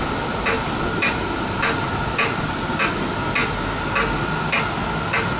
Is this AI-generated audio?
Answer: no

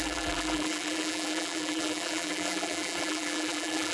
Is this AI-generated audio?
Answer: yes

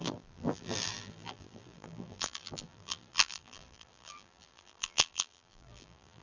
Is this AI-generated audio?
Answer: yes